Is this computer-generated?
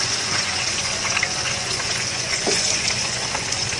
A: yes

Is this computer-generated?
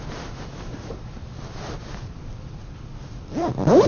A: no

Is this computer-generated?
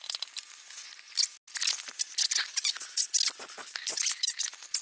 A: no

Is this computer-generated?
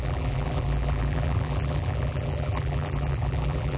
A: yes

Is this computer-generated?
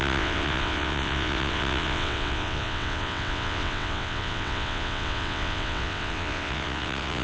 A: yes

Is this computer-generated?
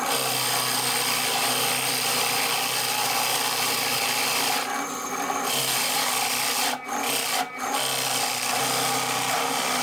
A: no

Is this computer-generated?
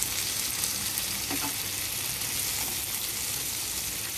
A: no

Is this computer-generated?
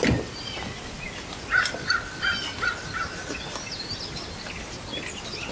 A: no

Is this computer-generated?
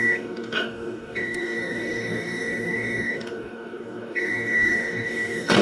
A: yes